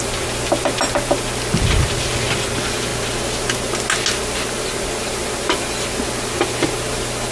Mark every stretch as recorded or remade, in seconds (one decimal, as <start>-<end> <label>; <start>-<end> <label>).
0.0-7.3 recorded